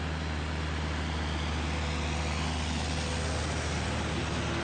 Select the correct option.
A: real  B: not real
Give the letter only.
A